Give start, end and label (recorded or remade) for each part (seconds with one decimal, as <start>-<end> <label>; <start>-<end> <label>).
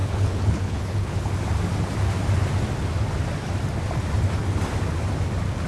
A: 0.0-1.3 remade; 1.3-5.7 recorded